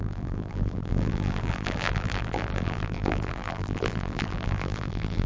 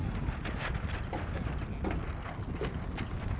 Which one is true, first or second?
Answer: second